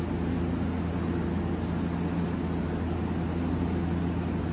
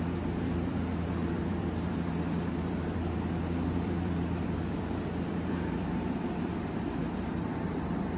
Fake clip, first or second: second